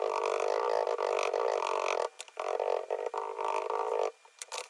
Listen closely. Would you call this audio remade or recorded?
recorded